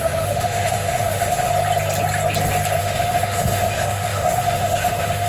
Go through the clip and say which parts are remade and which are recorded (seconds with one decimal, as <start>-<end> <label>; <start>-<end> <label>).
0.0-1.5 remade; 1.5-2.8 recorded; 2.8-5.3 remade